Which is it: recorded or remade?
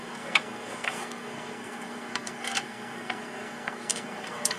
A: remade